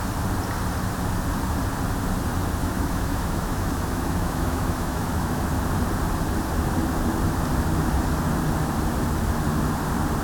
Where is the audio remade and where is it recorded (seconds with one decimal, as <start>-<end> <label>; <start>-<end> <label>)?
0.0-2.6 recorded; 2.6-5.5 remade; 5.5-10.2 recorded